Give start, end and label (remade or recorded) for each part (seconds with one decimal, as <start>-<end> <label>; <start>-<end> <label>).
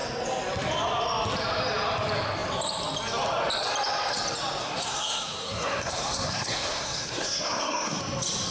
0.0-4.6 recorded; 4.6-8.0 remade; 8.0-8.5 recorded